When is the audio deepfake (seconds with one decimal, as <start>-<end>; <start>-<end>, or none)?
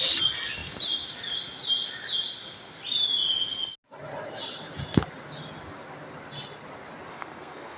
7.1-7.8